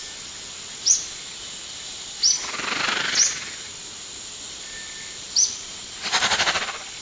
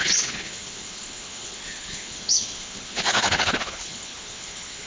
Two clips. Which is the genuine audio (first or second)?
first